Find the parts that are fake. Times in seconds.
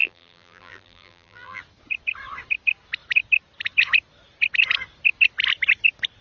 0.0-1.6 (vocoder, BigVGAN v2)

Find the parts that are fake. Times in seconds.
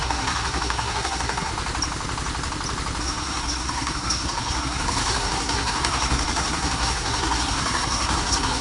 0.0-1.5 (codec, SNAC); 3.0-8.6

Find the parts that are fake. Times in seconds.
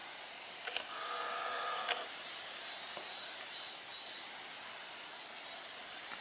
none